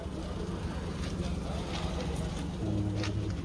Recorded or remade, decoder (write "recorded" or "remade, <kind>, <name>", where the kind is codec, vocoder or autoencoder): recorded